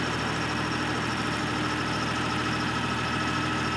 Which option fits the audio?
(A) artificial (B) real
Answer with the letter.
B